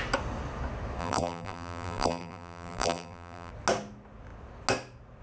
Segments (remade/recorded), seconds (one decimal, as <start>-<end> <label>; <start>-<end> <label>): 0.0-1.0 recorded; 1.0-3.5 remade; 3.5-5.2 recorded